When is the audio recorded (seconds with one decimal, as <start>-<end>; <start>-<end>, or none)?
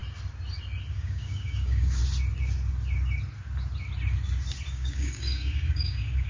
0.0-0.9; 2.0-4.7